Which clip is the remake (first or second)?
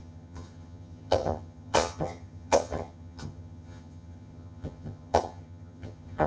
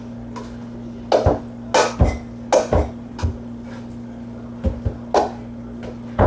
first